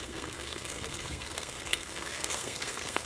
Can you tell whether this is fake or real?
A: fake